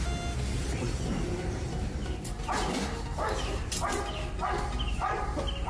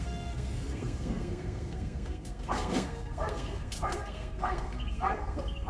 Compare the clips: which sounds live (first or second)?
first